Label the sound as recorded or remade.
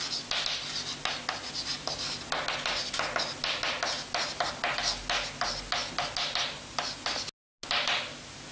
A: recorded